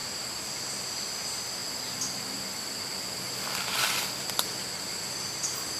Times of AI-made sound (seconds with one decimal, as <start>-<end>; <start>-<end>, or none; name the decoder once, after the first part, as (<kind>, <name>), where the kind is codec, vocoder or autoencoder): none